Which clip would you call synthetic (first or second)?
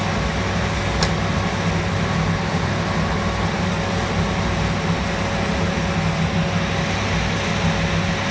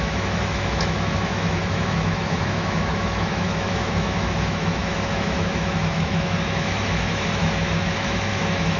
second